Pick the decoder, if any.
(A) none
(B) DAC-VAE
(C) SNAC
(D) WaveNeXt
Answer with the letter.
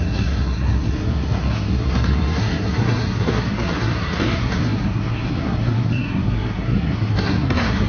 C